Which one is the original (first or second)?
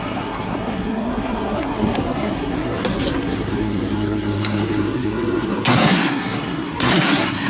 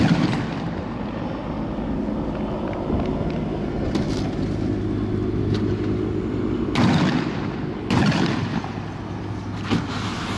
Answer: second